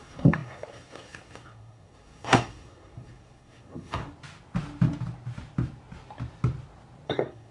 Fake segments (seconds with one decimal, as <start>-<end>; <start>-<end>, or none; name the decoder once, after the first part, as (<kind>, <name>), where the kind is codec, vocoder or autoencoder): 0.0-4.0 (codec, SNAC); 7.1-7.5